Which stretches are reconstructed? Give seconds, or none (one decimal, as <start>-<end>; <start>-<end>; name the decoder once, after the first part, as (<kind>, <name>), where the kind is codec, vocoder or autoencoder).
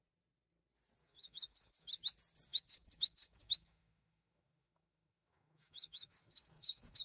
1.0-1.9 (autoencoder, DAC-VAE); 2.5-7.0